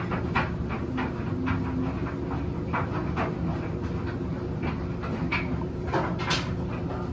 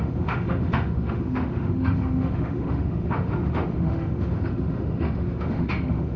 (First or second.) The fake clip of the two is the second